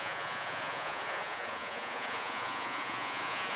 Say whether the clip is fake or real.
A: fake